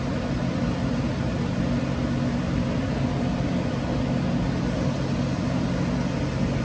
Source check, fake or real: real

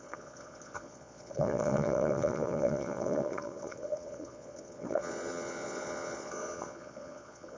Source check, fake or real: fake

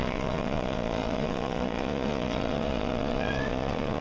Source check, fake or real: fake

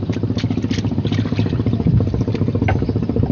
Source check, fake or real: real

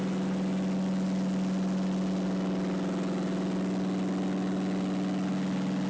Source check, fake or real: real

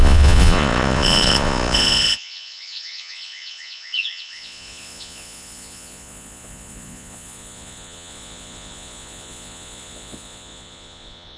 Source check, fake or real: fake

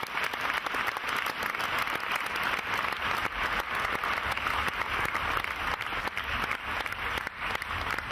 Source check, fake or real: real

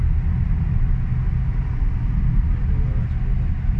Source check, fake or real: real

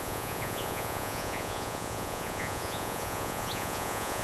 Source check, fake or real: fake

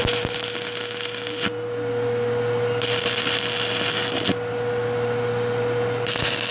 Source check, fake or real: real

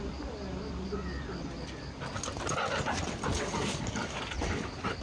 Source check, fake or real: real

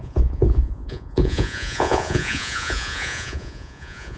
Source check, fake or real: fake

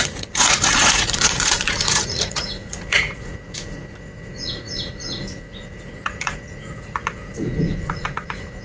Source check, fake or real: fake